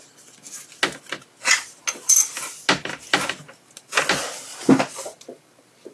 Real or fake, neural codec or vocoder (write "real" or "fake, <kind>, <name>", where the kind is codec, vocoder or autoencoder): real